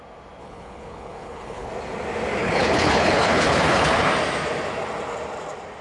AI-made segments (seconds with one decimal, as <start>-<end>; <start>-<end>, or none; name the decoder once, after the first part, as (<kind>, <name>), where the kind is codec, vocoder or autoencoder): 0.4-1.7 (codec, HILCodec); 2.4-4.1

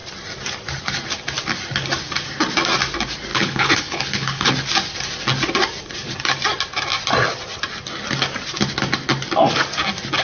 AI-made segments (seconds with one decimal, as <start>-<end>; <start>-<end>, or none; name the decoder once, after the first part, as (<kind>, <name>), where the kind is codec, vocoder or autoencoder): 3.3-4.5 (codec, HILCodec)

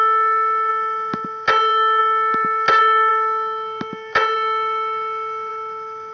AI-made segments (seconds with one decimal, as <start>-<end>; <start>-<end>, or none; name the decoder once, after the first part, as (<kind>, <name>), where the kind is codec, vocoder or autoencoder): none

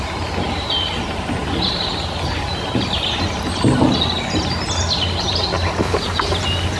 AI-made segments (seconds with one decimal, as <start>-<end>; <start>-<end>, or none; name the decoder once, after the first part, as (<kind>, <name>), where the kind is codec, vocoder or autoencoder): none

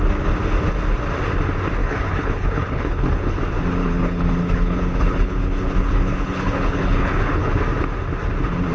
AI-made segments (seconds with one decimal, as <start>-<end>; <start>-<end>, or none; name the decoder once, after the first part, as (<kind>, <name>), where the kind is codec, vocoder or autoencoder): 1.8-3.4 (codec, HILCodec); 3.8-7.5